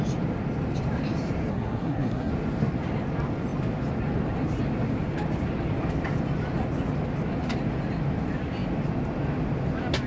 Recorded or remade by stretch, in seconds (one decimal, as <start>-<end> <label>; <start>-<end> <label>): 0.0-1.5 recorded; 1.5-2.3 remade; 2.3-10.1 recorded